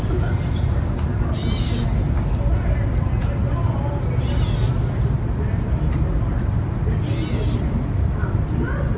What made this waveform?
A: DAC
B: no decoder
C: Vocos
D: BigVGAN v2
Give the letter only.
B